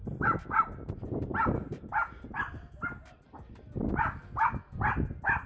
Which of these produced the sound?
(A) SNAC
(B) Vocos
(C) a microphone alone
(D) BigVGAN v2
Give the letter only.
C